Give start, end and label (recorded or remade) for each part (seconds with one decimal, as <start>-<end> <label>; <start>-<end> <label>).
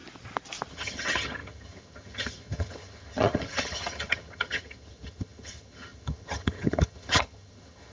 0.0-0.7 recorded; 0.7-7.9 remade